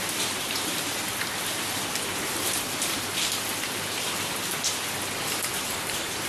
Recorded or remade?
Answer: recorded